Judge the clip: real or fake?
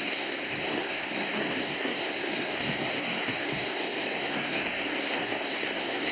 fake